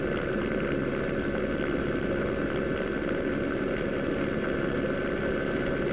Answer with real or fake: real